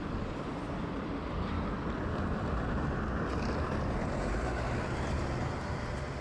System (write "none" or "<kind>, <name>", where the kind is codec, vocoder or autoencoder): none